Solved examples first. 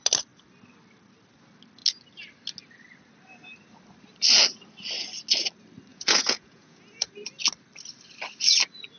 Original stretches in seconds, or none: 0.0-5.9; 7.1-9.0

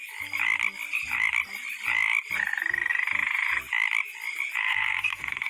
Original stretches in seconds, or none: 0.0-4.6

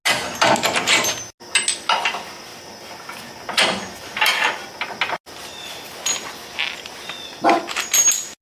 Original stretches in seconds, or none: 0.0-8.4